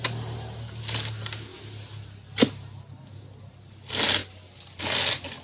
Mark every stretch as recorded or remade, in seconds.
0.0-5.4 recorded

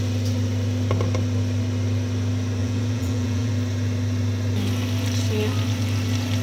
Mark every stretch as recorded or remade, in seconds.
0.0-2.6 recorded; 2.6-3.5 remade; 3.5-6.4 recorded

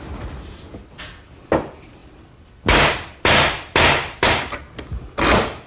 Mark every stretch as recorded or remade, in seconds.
0.0-5.7 recorded

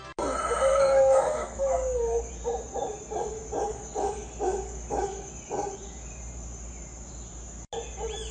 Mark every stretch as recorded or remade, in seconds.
0.0-0.7 recorded; 0.7-2.3 remade; 2.3-3.7 recorded; 3.7-5.3 remade; 5.3-8.3 recorded